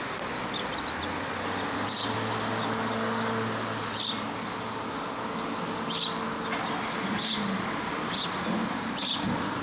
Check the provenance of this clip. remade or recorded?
recorded